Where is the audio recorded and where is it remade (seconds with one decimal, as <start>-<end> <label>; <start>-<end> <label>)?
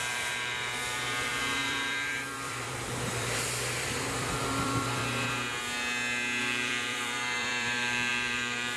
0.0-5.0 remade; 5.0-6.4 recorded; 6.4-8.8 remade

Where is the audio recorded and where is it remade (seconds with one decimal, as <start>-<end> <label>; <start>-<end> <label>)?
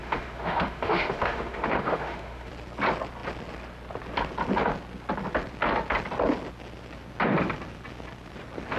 0.0-2.5 remade; 2.5-8.8 recorded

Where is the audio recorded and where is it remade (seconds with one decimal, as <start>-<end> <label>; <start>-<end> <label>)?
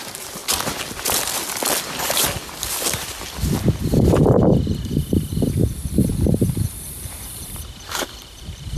0.0-0.4 remade; 0.4-3.8 recorded; 3.8-8.8 remade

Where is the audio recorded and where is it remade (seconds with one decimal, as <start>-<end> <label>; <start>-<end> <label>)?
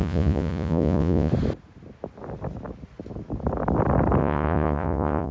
0.0-1.3 remade; 1.3-4.2 recorded; 4.2-5.3 remade